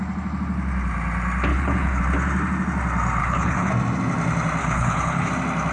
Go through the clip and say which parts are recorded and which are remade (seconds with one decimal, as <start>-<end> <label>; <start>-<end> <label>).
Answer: 0.0-1.5 recorded; 1.5-2.0 remade; 2.0-3.2 recorded; 3.2-3.7 remade; 3.7-4.6 recorded; 4.6-5.3 remade; 5.3-5.7 recorded